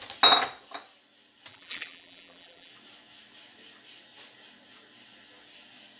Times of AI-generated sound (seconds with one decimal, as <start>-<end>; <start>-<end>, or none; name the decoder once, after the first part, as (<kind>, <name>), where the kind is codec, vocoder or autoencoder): 1.5-2.7 (vocoder, BigVGAN v2)